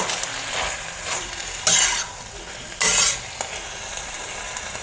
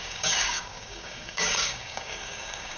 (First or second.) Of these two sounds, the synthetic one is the second